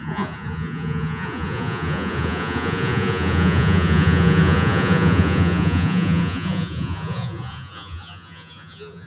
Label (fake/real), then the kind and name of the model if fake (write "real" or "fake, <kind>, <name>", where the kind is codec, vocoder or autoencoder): fake, vocoder, Vocos